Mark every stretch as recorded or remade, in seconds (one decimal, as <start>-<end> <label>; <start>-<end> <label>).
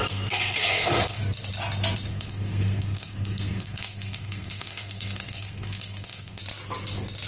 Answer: 0.0-1.2 remade; 1.2-2.1 recorded; 2.1-6.4 remade; 6.4-7.3 recorded